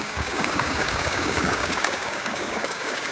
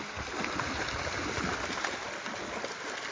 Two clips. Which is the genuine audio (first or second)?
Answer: second